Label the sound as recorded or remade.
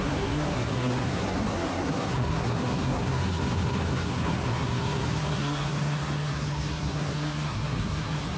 remade